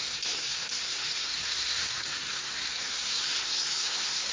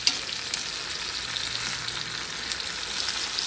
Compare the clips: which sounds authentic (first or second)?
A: second